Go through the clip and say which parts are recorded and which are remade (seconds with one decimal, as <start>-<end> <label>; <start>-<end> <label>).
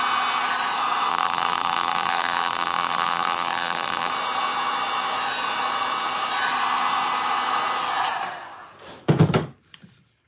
0.0-1.1 recorded; 1.1-4.1 remade; 4.1-10.3 recorded